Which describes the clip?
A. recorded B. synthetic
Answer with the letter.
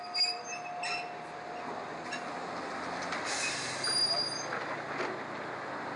A